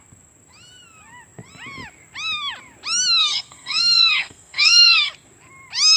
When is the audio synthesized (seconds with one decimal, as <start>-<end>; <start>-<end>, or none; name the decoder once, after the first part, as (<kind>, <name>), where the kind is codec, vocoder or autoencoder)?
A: 3.2-5.1 (codec, SNAC)